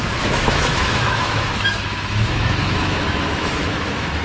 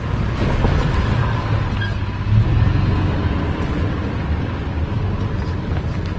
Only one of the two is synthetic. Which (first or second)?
first